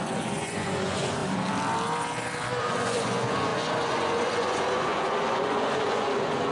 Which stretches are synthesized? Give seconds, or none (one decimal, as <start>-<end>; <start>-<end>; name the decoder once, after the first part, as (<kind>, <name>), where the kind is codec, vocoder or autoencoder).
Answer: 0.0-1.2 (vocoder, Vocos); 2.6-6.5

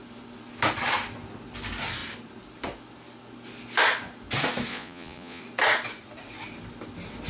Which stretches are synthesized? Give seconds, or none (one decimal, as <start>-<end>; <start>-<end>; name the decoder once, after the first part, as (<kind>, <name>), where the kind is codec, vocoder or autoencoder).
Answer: 4.7-5.4 (vocoder, Vocos)

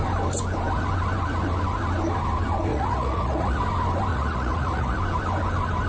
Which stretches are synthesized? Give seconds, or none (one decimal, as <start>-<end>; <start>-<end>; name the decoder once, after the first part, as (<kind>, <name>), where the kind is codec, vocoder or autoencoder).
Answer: 2.7-3.6 (vocoder, Vocos); 4.1-5.0

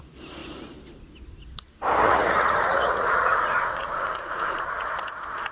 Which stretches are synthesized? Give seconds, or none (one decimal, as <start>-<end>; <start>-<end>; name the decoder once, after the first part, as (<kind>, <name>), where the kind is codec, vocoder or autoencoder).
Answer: 2.0-4.9 (vocoder, Vocos)

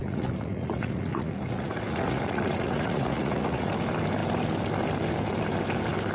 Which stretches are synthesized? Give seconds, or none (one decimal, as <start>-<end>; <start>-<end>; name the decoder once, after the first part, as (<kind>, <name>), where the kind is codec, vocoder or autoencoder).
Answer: 0.0-3.7 (vocoder, Vocos)

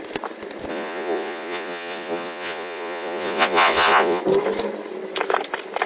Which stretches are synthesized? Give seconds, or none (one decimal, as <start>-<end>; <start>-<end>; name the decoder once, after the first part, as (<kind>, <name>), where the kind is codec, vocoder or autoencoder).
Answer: 0.7-4.2 (vocoder, Vocos)

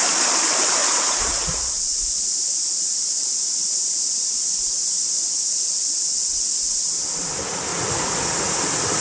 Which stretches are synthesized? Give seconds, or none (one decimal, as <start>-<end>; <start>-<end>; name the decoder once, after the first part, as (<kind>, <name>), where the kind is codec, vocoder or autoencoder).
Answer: 0.8-1.8 (vocoder, Vocos); 7.7-8.5